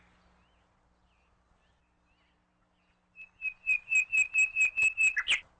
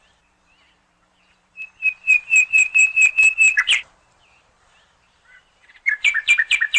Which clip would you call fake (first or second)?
second